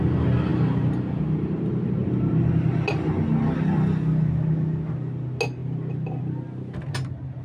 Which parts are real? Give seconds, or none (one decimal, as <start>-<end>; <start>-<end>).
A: 0.0-7.4